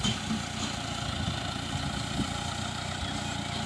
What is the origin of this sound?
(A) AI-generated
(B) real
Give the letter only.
B